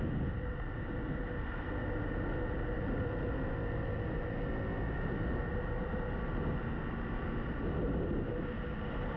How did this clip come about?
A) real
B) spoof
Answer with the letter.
A